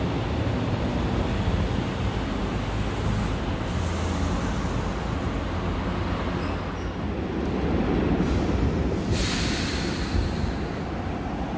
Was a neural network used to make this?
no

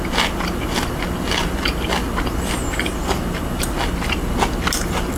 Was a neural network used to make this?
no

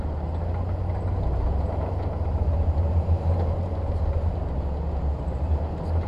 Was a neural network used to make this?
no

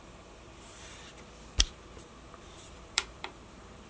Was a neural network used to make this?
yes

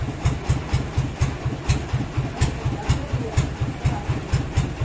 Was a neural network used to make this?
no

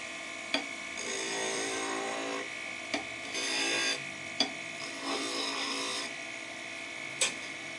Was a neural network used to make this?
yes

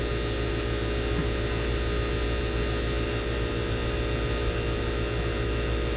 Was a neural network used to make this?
no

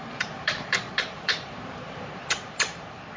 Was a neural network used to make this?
yes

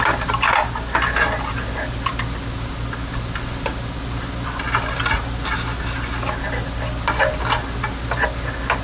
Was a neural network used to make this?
no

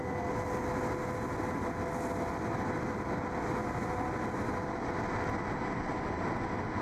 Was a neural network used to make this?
no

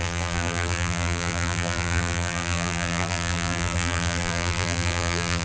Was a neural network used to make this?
yes